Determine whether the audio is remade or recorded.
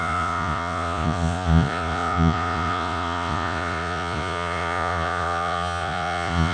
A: remade